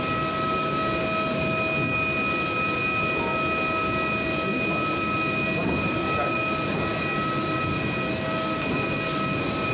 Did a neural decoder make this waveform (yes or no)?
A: no